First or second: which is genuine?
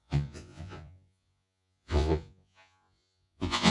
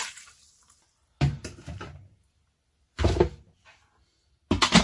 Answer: second